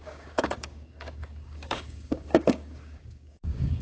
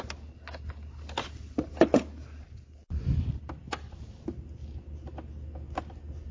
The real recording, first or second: second